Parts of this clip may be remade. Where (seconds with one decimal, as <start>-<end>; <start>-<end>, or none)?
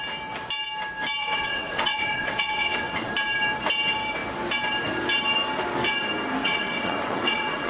1.2-3.1; 6.4-7.7